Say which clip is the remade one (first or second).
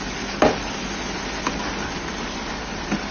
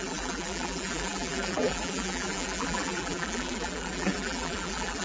second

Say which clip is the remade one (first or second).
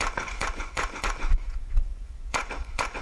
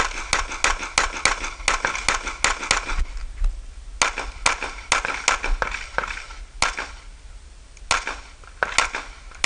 first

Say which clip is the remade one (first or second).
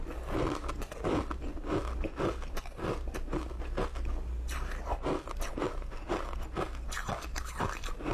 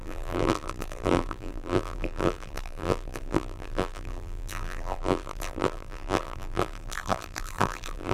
second